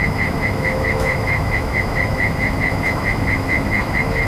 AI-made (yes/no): yes